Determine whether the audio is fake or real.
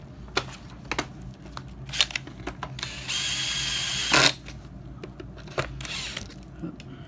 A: real